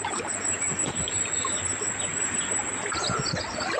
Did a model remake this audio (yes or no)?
no